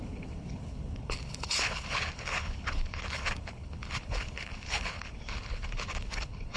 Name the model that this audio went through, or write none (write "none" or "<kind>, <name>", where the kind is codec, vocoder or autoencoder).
codec, HILCodec